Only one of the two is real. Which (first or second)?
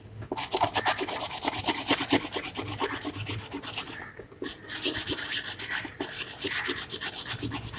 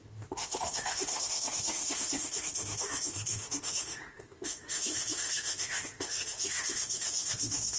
first